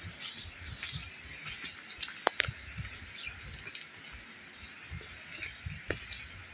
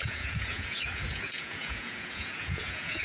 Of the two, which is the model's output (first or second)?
second